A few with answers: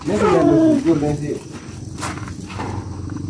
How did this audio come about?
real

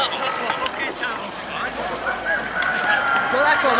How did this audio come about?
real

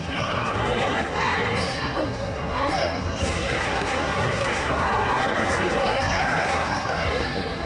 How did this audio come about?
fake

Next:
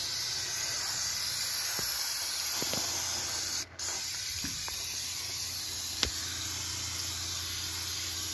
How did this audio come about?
real